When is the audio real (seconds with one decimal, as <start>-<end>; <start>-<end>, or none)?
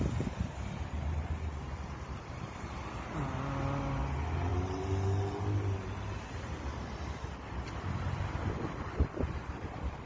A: 0.0-10.1